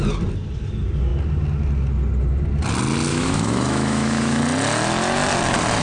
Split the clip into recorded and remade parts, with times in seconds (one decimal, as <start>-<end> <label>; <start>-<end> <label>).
0.0-3.1 recorded; 3.1-4.4 remade; 4.4-5.8 recorded